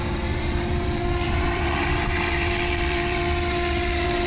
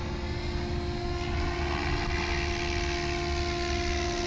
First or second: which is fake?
first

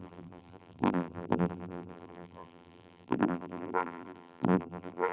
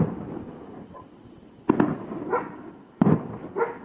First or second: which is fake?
first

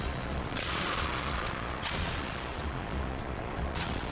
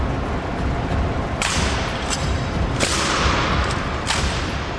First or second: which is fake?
first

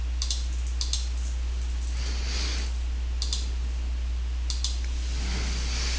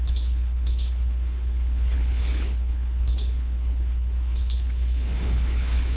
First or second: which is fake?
second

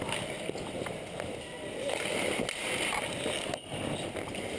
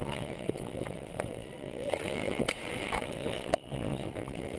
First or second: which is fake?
second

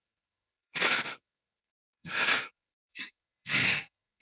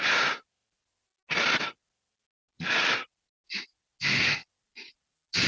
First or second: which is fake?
first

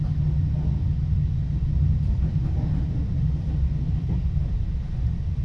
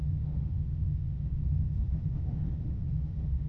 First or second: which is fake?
second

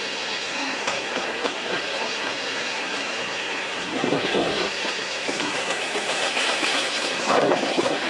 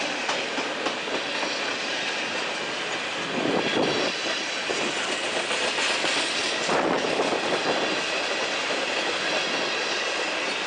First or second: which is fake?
first